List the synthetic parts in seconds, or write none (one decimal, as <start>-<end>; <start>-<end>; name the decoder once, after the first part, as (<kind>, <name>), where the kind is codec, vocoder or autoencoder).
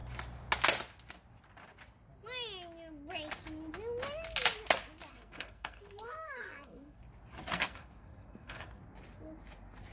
5.1-7.0 (codec, SNAC); 7.5-8.8